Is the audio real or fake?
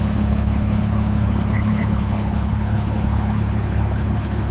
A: fake